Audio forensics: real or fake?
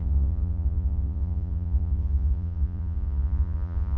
fake